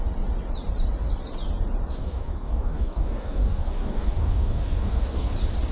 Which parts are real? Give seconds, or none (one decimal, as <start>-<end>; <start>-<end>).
0.0-1.9; 5.3-5.7